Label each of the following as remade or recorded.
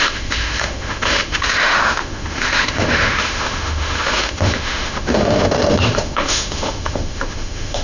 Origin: remade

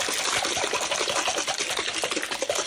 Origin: recorded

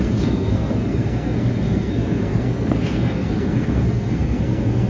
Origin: remade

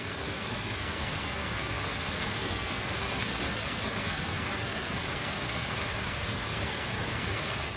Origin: remade